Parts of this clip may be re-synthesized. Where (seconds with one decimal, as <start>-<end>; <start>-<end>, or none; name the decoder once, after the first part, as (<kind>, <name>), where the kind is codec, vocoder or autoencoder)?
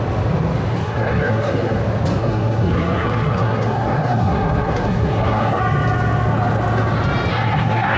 0.8-1.8 (codec, SNAC); 2.2-5.6; 7.3-8.0